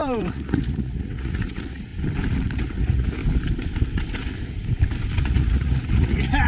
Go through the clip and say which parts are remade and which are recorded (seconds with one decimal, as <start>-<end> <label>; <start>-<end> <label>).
0.0-1.9 remade; 1.9-2.6 recorded; 2.6-3.2 remade; 3.2-5.2 recorded; 5.2-6.5 remade